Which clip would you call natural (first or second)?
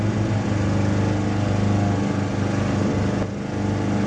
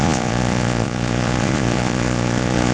first